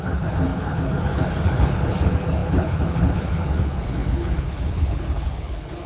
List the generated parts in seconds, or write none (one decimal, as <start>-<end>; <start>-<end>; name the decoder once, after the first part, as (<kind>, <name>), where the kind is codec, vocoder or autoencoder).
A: 0.0-5.9 (codec, HILCodec)